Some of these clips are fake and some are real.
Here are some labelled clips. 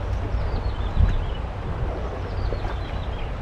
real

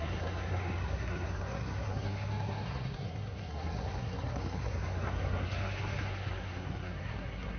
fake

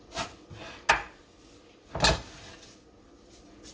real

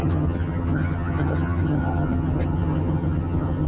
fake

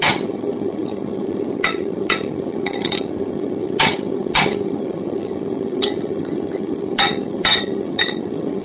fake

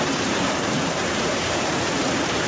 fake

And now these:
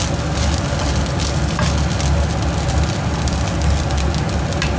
real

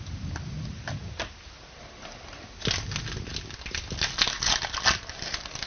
real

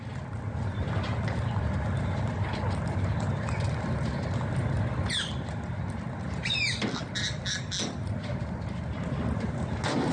real